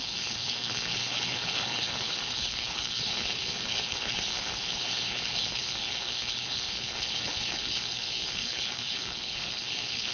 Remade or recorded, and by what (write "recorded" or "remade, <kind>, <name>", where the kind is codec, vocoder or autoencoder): remade, codec, HILCodec